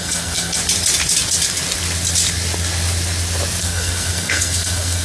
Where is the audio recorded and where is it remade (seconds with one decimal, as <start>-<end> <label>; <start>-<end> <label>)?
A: 0.0-0.6 remade; 0.6-3.6 recorded; 3.6-5.0 remade